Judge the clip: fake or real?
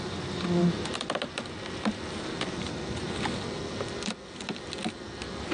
real